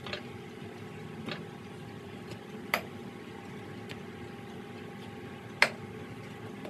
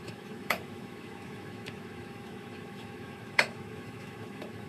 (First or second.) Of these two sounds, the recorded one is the first